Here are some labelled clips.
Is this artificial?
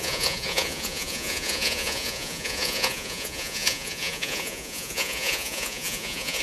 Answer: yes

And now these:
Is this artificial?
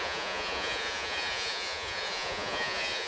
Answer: yes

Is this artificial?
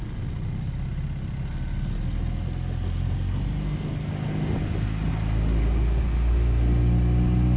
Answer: no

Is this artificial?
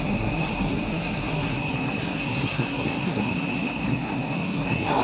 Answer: yes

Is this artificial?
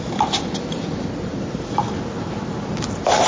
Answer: no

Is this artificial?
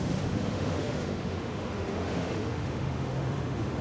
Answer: yes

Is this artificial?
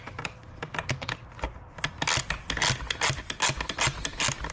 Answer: no